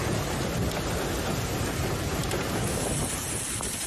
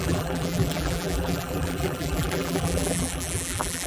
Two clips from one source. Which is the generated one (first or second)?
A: second